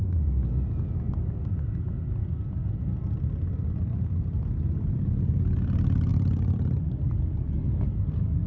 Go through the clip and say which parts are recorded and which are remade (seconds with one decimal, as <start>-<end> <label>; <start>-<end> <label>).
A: 0.0-6.1 recorded; 6.1-7.8 remade; 7.8-8.5 recorded